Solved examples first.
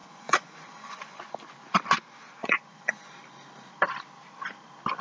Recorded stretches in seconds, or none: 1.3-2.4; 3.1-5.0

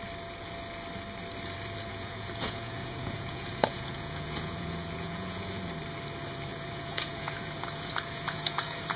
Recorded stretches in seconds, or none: 0.0-1.9; 5.7-6.5

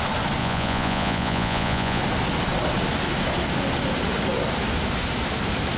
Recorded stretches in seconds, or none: 0.0-0.4; 2.0-5.8

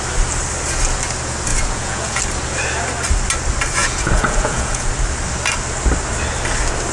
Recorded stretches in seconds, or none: 0.0-1.5; 2.2-3.8; 4.9-6.9

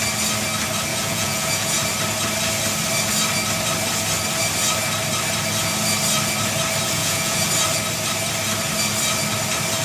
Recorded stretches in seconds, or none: 0.0-0.9; 1.8-7.0; 7.5-9.8

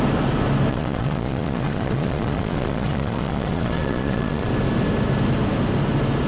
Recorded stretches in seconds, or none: 0.0-0.7; 4.5-6.3

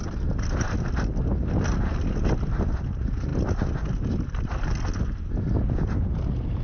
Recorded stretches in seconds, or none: 0.0-6.6